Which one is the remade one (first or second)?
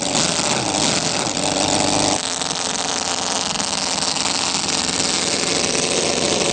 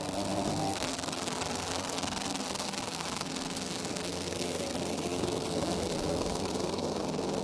second